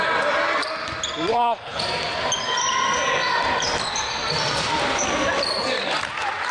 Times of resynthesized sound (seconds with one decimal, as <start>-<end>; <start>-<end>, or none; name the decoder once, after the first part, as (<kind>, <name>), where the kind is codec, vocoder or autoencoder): 1.3-1.8 (codec, HILCodec)

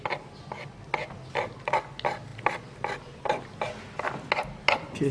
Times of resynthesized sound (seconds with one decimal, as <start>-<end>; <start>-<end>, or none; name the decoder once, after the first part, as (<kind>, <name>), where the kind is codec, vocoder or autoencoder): none

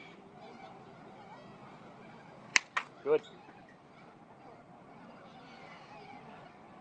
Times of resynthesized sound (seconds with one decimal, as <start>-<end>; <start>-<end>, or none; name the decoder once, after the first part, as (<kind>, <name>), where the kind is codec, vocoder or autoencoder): none